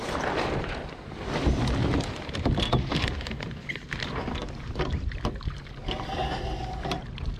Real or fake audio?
real